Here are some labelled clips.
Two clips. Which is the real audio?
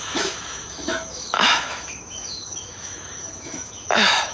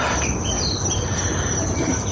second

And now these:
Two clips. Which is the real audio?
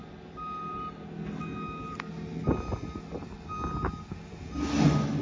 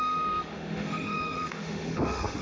first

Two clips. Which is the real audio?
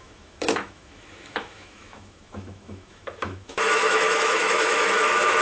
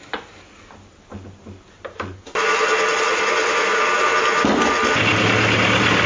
second